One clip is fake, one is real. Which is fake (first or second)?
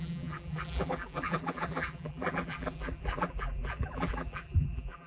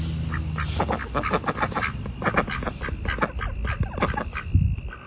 first